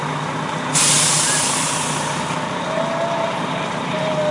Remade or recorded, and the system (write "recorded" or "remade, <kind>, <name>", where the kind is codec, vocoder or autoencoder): recorded